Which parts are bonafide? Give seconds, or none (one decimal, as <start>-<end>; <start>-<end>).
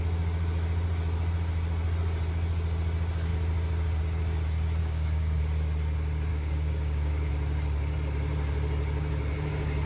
0.0-4.8; 5.4-6.3; 7.3-9.9